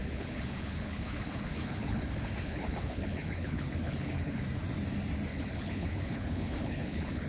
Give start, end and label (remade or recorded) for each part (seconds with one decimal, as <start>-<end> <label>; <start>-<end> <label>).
0.0-4.4 remade; 4.4-5.3 recorded; 5.3-7.3 remade